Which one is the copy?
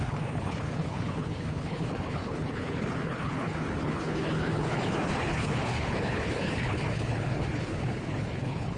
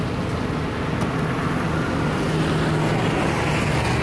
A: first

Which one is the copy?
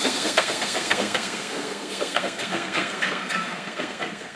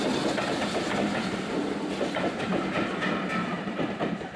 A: first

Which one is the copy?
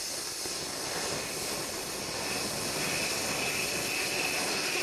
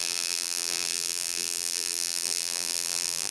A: second